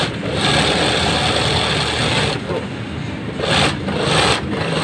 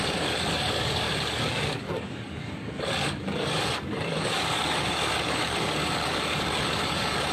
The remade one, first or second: second